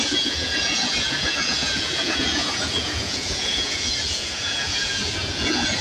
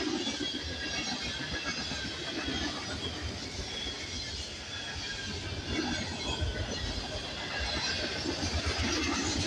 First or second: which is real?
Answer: second